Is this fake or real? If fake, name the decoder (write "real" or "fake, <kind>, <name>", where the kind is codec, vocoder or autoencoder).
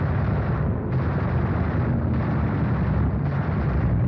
real